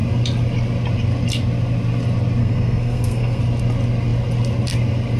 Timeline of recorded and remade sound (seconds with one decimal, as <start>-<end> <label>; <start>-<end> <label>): 0.0-2.4 recorded; 2.4-3.4 remade; 3.4-5.2 recorded